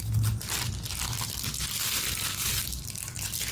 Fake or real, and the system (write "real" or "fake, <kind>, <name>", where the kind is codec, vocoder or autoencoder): real